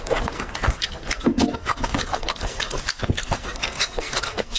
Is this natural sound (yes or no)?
no